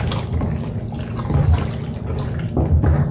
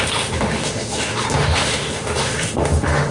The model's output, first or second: second